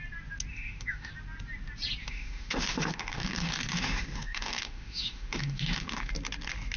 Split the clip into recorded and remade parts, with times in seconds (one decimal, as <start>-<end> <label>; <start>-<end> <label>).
0.0-0.5 recorded; 0.5-1.1 remade; 1.1-2.0 recorded; 2.0-6.1 remade; 6.1-6.8 recorded